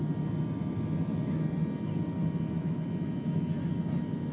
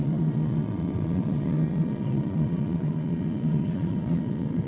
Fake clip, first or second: second